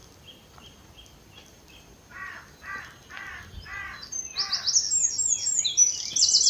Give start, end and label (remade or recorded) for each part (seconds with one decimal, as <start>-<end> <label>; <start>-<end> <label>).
0.0-2.8 remade; 2.8-6.5 recorded

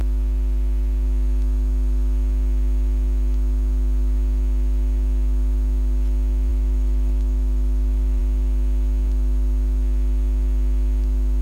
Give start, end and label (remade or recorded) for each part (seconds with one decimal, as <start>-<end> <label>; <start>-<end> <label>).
0.0-6.5 recorded; 6.5-8.2 remade; 8.2-11.4 recorded

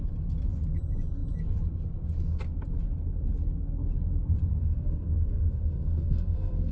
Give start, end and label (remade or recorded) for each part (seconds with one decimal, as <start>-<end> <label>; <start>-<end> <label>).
0.0-4.6 recorded; 4.6-6.7 remade

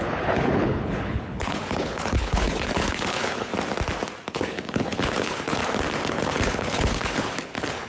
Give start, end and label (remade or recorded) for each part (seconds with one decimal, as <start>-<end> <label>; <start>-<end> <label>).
0.0-3.5 remade; 3.5-4.3 recorded; 4.3-5.6 remade; 5.6-6.1 recorded; 6.1-7.9 remade

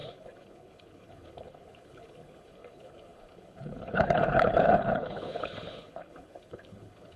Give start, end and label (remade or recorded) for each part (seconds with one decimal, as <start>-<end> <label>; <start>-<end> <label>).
0.0-7.2 remade

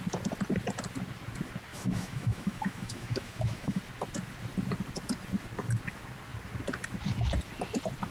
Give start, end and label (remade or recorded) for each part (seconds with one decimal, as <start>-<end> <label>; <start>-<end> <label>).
0.0-1.7 recorded; 1.7-3.8 remade; 3.8-8.1 recorded

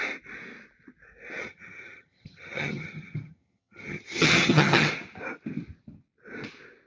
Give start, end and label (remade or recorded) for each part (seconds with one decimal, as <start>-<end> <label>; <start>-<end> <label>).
0.0-1.4 recorded; 1.4-4.9 remade; 4.9-6.9 recorded

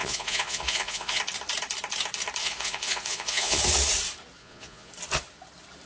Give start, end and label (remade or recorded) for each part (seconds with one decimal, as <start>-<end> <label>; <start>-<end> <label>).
0.0-1.2 remade; 1.2-2.4 recorded; 2.4-3.6 remade; 3.6-4.4 recorded; 4.4-4.9 remade; 4.9-5.9 recorded